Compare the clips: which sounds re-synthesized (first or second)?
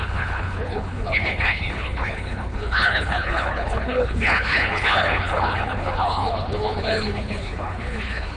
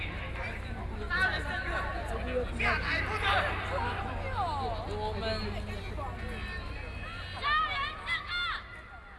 first